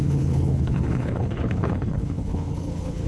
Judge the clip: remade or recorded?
remade